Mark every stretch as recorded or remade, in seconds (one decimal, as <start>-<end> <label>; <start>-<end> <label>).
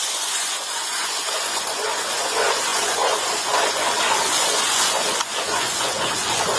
0.0-6.6 remade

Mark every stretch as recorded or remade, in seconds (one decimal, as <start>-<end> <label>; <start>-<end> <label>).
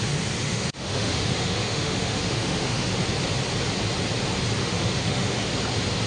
0.0-0.4 recorded; 0.4-2.9 remade; 2.9-4.6 recorded; 4.6-5.5 remade; 5.5-6.1 recorded